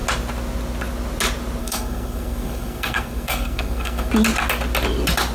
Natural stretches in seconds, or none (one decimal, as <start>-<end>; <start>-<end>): 0.0-1.6; 4.1-5.3